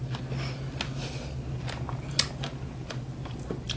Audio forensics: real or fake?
real